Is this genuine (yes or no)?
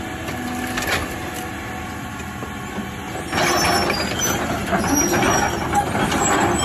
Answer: yes